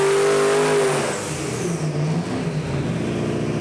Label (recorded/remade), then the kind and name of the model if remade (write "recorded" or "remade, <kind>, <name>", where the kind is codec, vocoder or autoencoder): recorded